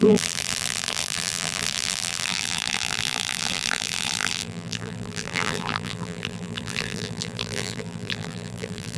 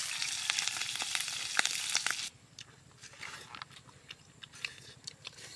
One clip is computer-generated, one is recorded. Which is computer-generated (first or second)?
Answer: first